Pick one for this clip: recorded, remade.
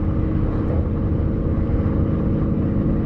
recorded